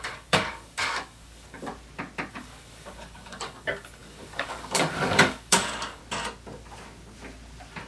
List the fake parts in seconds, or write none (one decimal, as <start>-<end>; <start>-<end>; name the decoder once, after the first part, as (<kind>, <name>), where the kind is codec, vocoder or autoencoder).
0.0-1.7 (codec, DAC); 2.3-6.0